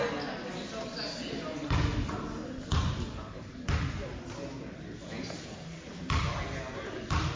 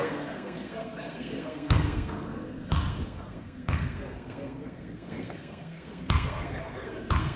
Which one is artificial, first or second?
second